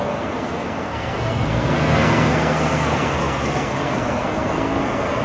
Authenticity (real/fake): fake